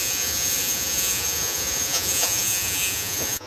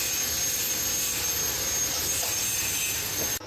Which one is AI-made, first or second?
first